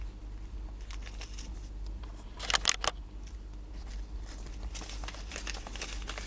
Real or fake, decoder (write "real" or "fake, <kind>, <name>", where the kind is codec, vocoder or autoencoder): real